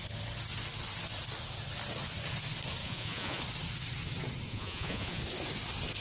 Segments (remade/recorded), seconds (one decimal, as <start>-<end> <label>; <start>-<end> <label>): 0.0-2.8 recorded; 2.8-3.4 remade; 3.4-4.5 recorded; 4.5-5.2 remade; 5.2-6.0 recorded